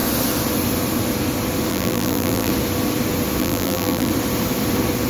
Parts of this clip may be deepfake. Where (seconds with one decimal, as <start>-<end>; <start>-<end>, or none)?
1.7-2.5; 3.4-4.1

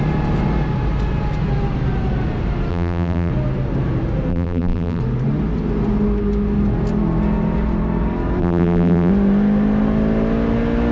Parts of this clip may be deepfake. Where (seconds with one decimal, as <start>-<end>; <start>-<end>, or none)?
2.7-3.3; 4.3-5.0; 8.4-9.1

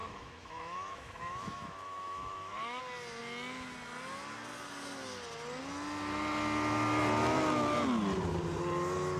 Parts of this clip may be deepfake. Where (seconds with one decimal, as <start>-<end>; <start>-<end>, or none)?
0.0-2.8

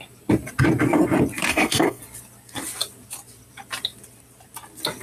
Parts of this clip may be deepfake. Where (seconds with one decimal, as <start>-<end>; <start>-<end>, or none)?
1.5-2.0

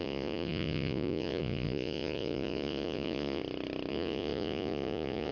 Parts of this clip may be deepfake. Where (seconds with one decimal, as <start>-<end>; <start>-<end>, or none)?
0.0-3.4; 3.9-5.3

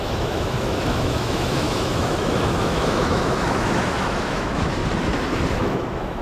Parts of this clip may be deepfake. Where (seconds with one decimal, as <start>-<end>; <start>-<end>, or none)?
0.0-4.8; 5.5-6.2

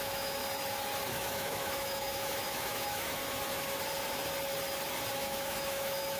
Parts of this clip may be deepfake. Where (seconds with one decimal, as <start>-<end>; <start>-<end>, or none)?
0.0-0.4; 1.1-3.2; 5.1-6.2